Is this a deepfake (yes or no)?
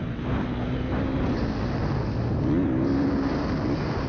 no